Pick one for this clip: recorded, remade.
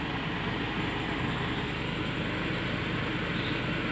recorded